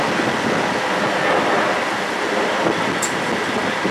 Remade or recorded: recorded